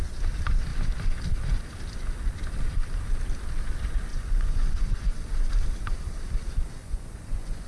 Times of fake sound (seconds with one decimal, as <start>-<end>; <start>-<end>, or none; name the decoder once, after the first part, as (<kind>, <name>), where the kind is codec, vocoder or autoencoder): 4.1-5.1 (vocoder, Vocos); 6.8-7.7